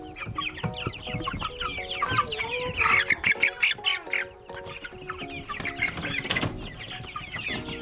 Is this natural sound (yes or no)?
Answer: yes